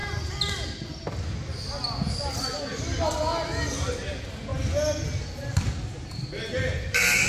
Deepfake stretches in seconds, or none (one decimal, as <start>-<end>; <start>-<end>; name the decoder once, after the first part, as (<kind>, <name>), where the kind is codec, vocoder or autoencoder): none